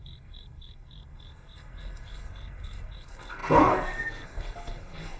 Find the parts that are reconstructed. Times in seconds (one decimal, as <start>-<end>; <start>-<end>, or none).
0.0-5.2